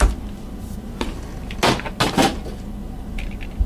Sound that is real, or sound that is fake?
real